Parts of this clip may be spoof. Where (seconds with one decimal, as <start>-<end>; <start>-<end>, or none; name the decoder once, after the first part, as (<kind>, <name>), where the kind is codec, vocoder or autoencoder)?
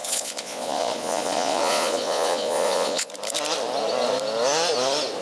0.0-3.1 (vocoder, Vocos)